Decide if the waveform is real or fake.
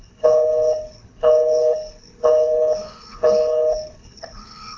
fake